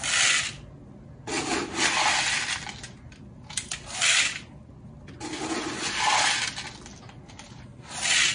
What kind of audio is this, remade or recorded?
recorded